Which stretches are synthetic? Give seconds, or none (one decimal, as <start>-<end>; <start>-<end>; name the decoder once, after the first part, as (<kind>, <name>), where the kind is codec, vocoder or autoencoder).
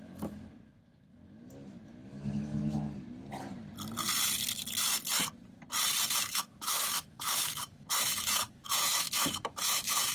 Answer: 0.0-2.6 (autoencoder, DAC-VAE); 6.2-10.1